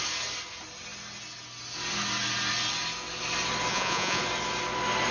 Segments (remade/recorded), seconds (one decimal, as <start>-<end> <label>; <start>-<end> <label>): 0.0-3.7 recorded; 3.7-4.2 remade; 4.2-5.1 recorded